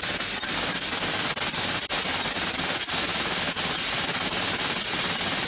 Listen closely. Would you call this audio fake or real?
real